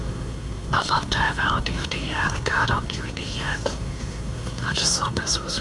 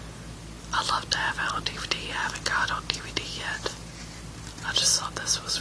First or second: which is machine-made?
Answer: first